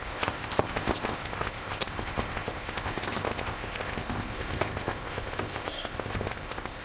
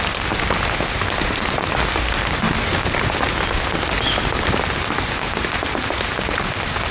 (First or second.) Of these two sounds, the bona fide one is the second